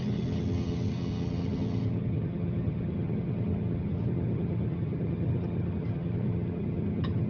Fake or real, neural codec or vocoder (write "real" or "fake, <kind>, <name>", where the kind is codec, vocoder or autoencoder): fake, vocoder, HiFi-GAN